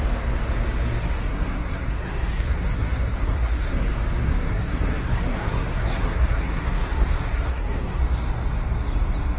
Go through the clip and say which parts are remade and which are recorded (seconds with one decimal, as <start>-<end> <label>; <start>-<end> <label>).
0.0-1.2 recorded; 1.2-3.9 remade; 3.9-4.3 recorded; 4.3-8.0 remade; 8.0-9.4 recorded